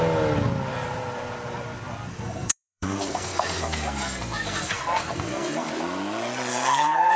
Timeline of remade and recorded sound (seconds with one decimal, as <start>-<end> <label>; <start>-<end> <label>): 0.0-2.1 recorded; 2.1-5.7 remade; 5.7-6.5 recorded; 6.5-7.2 remade

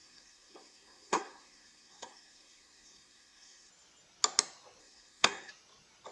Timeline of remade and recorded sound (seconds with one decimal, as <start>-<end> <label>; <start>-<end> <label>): 0.0-3.7 remade; 3.7-4.8 recorded; 4.8-5.5 remade; 5.5-6.1 recorded

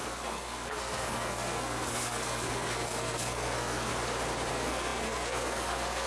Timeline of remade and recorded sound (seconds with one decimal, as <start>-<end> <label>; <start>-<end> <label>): 0.0-3.9 remade; 3.9-4.5 recorded; 4.5-6.1 remade

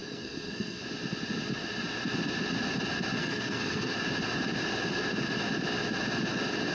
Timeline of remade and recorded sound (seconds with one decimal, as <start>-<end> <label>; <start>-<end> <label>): 0.0-0.8 remade; 0.8-3.2 recorded; 3.2-3.9 remade; 3.9-6.7 recorded

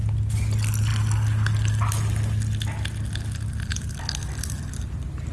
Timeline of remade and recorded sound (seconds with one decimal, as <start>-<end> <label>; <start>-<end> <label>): 0.0-5.3 recorded

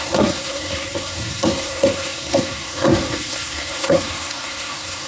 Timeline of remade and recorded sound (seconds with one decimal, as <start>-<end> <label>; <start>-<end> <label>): 0.0-5.1 remade

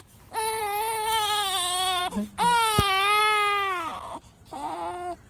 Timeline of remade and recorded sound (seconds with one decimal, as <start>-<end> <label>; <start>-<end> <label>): 0.0-5.3 recorded

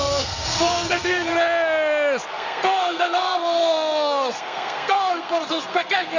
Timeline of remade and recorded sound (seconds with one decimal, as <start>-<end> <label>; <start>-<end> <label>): 0.0-1.3 remade; 1.3-2.3 recorded; 2.3-6.2 remade